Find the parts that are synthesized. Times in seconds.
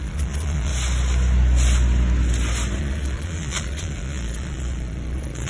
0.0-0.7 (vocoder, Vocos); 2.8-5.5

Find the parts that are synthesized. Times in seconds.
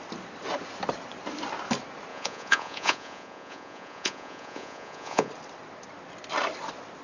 2.1-5.3 (vocoder, Vocos)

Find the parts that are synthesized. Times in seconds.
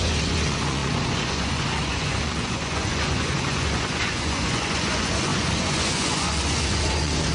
0.0-7.3 (vocoder, Vocos)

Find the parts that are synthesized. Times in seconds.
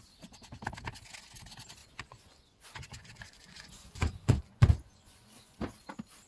1.8-5.6 (vocoder, Vocos)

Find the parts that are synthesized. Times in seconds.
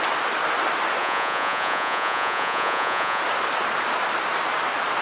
1.0-3.2 (vocoder, Vocos)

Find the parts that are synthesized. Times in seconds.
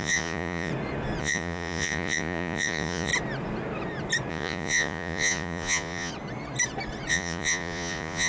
0.0-0.7 (vocoder, Vocos); 1.2-3.1; 4.3-6.1; 7.1-8.3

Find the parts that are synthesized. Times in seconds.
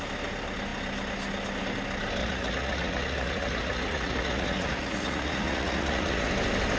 2.2-6.3 (vocoder, Vocos)